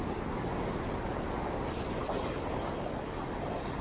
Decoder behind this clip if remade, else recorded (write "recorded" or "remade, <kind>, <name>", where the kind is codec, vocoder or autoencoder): recorded